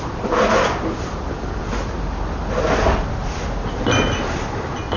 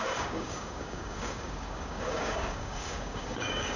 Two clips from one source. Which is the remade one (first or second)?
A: second